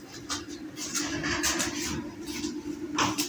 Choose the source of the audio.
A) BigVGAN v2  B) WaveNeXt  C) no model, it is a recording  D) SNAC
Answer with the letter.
C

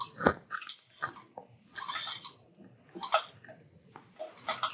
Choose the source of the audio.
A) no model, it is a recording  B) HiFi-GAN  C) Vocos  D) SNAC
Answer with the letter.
A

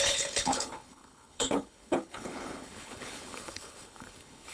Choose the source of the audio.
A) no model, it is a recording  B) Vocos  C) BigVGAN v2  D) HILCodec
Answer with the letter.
D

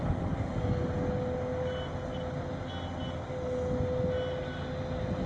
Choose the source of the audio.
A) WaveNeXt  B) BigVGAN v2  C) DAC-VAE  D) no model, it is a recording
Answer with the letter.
D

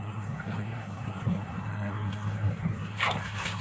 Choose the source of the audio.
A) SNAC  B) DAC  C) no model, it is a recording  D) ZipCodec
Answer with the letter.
A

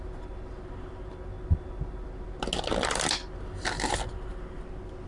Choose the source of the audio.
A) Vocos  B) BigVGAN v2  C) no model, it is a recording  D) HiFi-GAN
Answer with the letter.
C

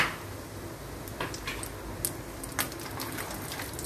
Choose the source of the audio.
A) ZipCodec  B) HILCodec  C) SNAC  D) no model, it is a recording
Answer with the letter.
D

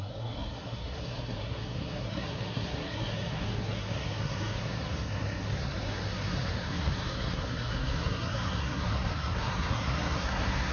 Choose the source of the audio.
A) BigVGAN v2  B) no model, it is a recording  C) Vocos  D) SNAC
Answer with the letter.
D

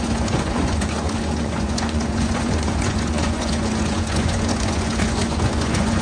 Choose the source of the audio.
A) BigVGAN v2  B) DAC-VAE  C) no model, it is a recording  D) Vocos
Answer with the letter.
D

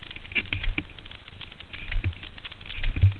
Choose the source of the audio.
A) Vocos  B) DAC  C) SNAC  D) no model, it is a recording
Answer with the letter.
D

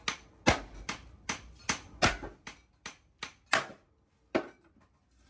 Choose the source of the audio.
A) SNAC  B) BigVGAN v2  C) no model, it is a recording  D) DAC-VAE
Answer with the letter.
C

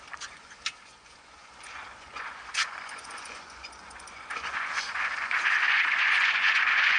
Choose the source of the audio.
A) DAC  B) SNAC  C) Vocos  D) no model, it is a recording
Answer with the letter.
C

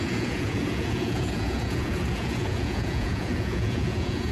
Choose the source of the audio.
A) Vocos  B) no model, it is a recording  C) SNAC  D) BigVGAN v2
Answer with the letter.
A